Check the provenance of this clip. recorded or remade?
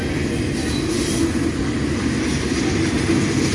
recorded